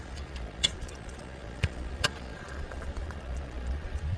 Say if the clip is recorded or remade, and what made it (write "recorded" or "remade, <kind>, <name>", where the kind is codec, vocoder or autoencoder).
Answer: remade, vocoder, Vocos